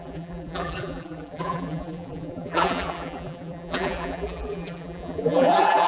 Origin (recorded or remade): remade